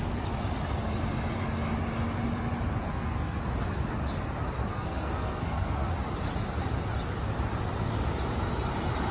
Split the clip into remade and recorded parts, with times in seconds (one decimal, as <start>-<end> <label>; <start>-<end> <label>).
0.0-2.9 recorded; 2.9-3.4 remade; 3.4-4.7 recorded; 4.7-5.9 remade; 5.9-9.1 recorded